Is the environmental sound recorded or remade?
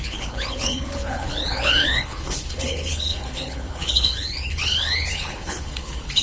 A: remade